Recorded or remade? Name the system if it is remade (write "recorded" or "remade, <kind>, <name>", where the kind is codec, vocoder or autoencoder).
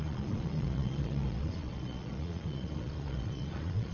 remade, vocoder, Vocos